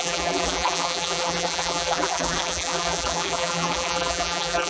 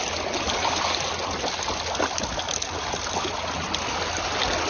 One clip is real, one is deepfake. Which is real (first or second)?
second